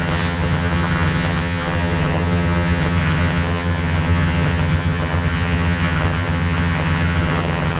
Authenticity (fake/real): fake